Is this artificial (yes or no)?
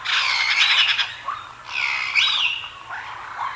no